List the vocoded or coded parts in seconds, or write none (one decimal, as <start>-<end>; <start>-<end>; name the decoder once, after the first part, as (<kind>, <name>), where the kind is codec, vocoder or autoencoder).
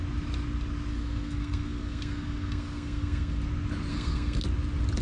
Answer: 0.9-3.4 (codec, SNAC); 3.9-4.4